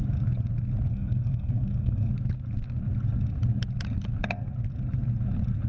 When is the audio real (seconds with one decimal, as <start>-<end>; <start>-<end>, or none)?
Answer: 0.0-0.9; 2.1-5.7